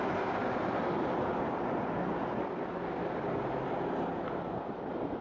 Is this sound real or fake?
real